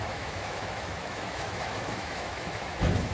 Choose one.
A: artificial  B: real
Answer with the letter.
A